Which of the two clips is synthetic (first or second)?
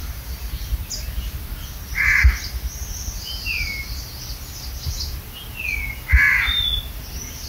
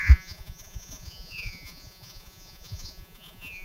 second